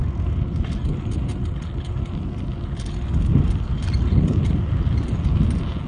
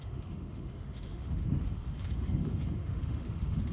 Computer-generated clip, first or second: second